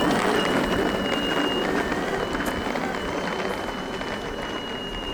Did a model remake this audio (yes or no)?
no